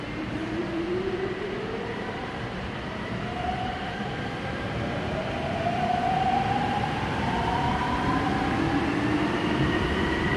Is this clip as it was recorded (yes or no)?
no